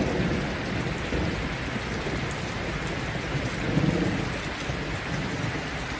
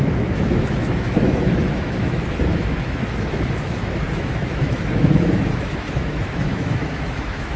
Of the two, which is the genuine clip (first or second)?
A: first